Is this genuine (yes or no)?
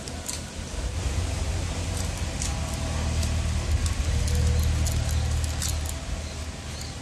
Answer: yes